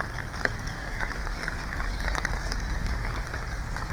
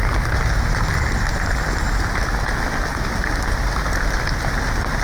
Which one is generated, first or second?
first